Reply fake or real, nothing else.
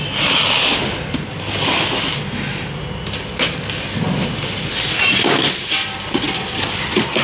real